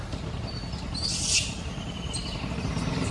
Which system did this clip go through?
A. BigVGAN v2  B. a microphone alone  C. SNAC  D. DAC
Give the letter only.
A